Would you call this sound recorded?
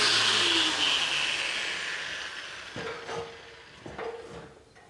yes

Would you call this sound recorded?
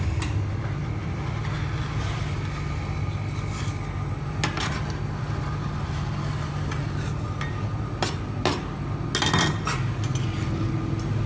yes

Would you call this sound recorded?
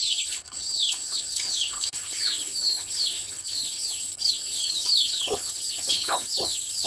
no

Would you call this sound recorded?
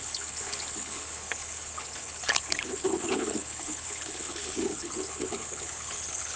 no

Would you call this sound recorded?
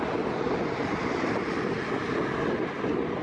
yes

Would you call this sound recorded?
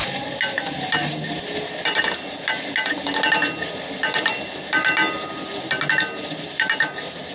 yes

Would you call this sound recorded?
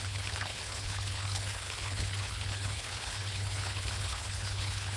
no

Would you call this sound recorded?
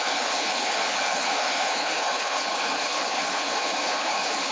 no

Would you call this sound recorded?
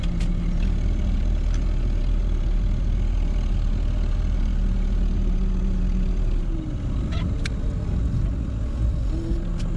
yes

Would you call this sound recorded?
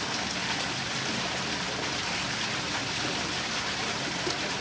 yes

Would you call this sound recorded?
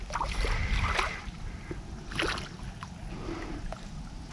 yes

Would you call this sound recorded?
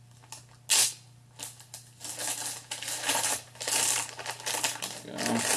yes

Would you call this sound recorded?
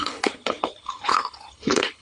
no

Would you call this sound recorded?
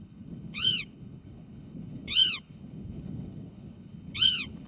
no